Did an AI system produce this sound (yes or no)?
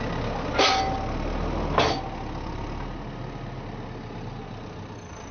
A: no